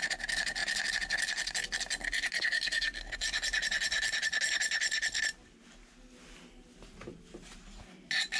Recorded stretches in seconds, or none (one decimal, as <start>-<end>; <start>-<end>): 0.0-8.4